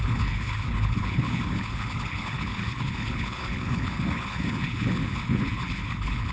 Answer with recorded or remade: remade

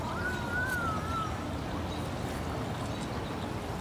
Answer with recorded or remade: recorded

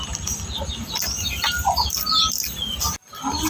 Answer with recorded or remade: recorded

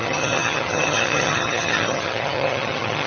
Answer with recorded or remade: remade